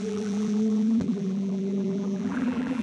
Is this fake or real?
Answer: fake